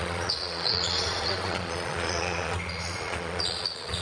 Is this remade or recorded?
remade